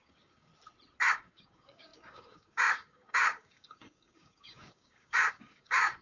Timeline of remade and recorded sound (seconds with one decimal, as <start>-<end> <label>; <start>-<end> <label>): 0.0-0.5 remade; 0.5-1.1 recorded; 1.1-6.0 remade